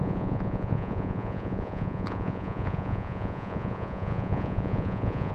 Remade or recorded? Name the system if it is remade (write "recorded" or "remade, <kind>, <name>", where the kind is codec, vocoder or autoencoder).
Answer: remade, vocoder, Vocos